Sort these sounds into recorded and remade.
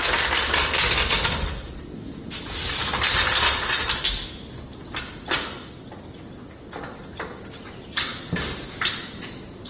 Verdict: recorded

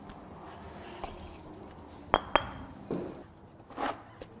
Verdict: recorded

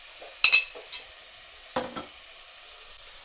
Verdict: recorded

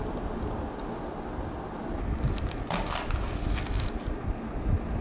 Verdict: recorded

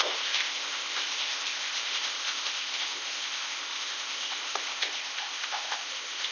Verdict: remade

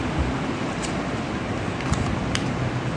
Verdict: recorded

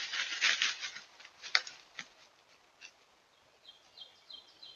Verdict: recorded